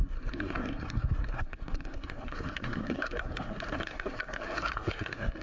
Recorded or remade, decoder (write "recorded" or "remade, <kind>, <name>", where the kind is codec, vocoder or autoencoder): remade, codec, SNAC